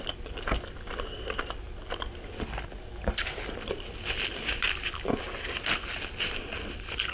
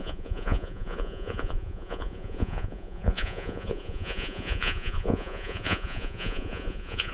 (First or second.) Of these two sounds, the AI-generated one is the second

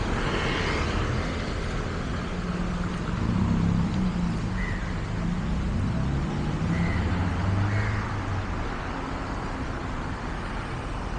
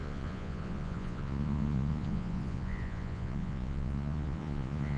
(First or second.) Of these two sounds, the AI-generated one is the second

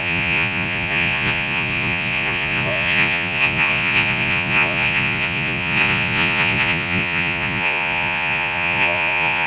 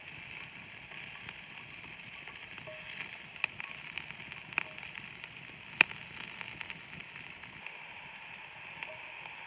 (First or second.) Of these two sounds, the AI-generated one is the first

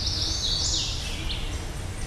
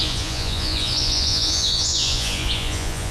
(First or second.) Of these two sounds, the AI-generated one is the second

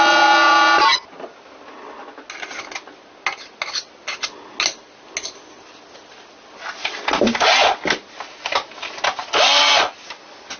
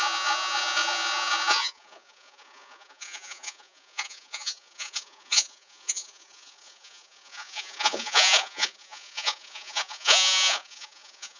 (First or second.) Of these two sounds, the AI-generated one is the second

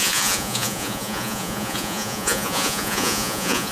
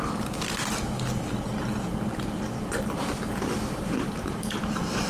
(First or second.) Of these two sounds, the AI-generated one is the first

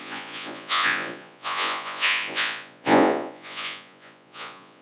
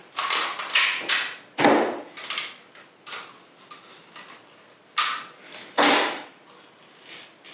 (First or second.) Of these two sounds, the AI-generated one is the first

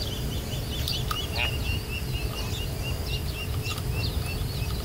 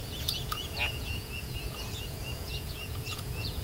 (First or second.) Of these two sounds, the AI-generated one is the second